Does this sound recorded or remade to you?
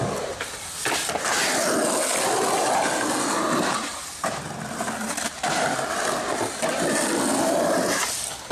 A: recorded